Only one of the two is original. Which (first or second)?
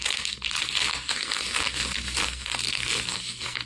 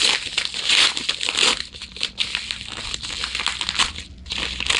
second